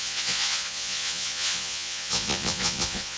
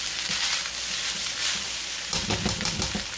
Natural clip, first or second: second